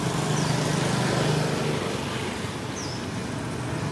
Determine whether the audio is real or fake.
real